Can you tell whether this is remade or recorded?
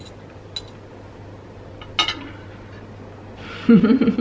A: recorded